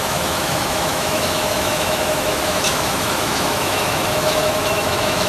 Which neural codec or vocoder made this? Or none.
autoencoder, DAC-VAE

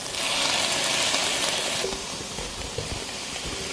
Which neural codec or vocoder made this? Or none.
none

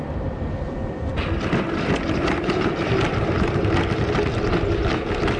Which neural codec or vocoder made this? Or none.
none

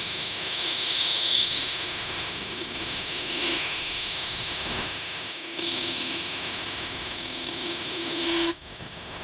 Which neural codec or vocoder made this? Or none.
autoencoder, DAC-VAE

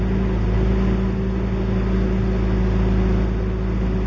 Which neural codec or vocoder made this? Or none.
none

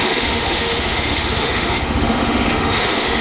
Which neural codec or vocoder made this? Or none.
autoencoder, DAC-VAE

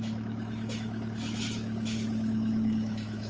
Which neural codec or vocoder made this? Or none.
autoencoder, DAC-VAE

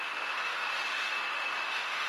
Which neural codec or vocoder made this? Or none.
autoencoder, DAC-VAE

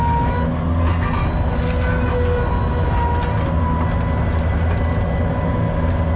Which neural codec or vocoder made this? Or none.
none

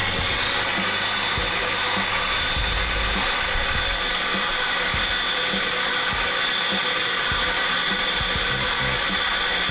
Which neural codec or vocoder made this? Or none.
none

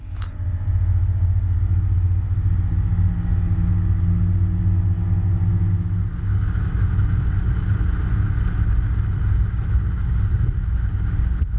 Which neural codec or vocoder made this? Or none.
none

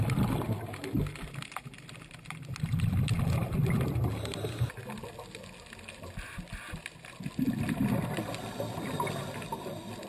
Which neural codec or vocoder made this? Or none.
none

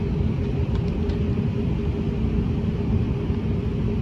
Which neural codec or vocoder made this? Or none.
none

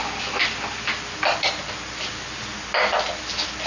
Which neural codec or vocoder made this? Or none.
none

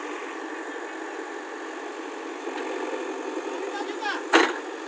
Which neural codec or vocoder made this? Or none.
none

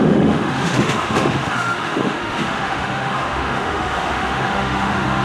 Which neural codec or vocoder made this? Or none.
autoencoder, DAC-VAE